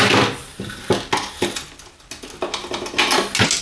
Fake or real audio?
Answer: real